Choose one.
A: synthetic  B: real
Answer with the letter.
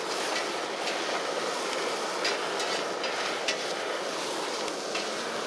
B